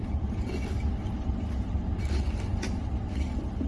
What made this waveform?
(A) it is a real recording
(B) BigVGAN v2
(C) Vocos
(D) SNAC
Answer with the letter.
A